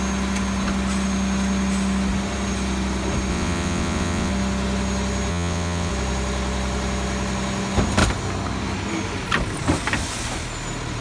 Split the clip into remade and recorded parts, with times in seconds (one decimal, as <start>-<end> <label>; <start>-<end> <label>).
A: 0.0-3.3 recorded; 3.3-4.3 remade; 4.3-5.3 recorded; 5.3-5.9 remade; 5.9-11.0 recorded